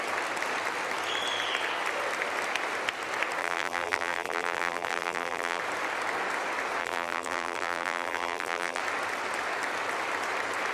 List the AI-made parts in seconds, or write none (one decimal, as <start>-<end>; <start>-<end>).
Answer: 3.4-5.6; 6.8-8.8